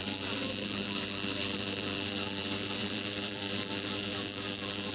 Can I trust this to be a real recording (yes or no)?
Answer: no